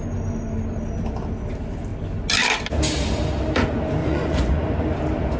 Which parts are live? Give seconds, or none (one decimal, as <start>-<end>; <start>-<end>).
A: 0.0-4.0; 4.7-5.4